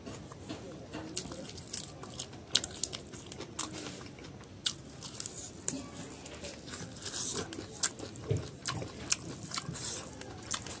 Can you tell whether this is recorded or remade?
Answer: recorded